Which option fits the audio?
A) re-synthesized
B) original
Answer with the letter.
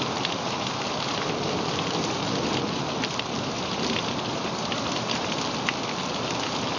A